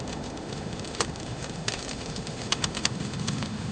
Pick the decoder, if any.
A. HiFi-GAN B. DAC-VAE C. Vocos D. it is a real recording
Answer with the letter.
B